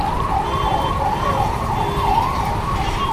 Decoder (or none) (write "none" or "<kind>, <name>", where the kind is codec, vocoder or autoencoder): vocoder, BigVGAN v2